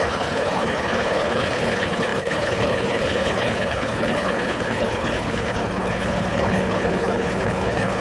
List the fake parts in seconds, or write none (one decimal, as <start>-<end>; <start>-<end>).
0.0-8.0